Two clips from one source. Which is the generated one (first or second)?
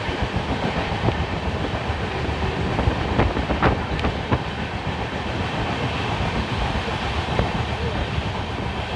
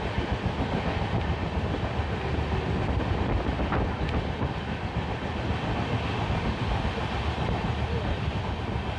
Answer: first